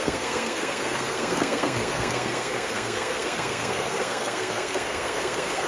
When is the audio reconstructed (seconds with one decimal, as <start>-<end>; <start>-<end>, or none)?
0.0-5.7